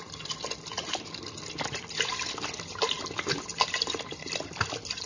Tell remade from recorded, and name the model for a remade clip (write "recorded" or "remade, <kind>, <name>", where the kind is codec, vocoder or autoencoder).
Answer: recorded